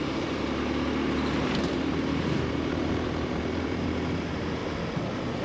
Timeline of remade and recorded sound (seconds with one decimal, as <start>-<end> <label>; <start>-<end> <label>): 0.0-4.6 remade; 4.6-5.4 recorded